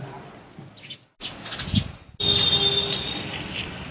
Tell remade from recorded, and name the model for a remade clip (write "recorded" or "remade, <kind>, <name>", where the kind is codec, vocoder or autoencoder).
recorded